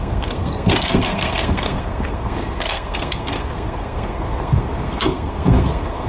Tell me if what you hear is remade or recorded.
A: remade